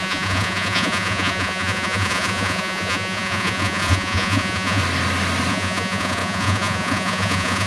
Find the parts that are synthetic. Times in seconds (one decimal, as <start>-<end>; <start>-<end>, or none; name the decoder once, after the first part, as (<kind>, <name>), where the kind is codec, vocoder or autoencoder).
0.0-4.8 (vocoder, Vocos); 5.5-7.7